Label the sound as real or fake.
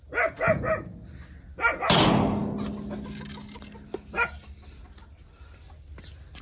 real